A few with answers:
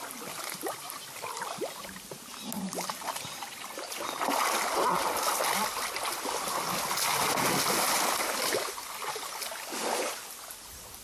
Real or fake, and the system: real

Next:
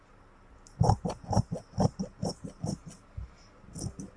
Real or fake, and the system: real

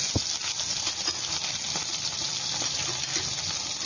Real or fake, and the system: real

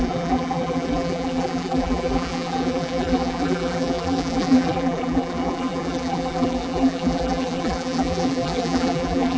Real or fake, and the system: fake, vocoder, BigVGAN v2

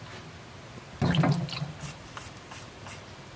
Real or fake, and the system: real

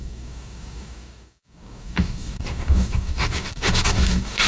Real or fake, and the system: fake, codec, DAC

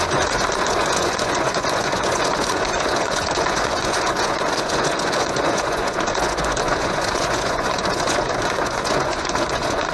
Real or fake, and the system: fake, vocoder, Vocos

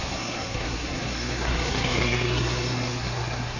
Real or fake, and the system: fake, codec, SNAC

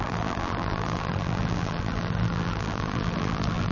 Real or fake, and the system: fake, vocoder, BigVGAN v2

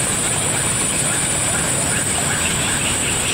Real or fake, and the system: fake, vocoder, BigVGAN v2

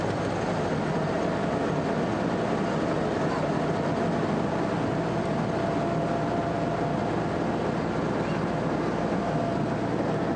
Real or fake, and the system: real